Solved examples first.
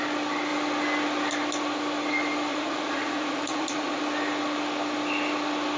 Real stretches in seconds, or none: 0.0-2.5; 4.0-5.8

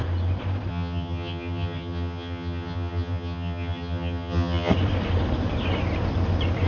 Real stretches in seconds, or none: 0.0-0.7; 4.7-6.7

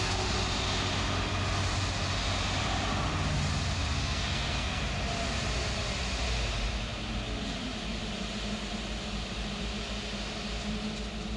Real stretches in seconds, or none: 0.0-4.0; 4.8-11.4

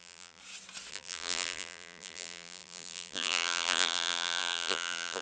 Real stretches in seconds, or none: 0.4-0.9

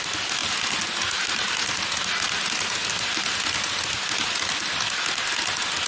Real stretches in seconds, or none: 0.0-5.9